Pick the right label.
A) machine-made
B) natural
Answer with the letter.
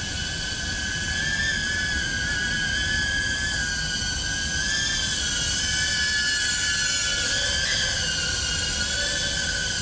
B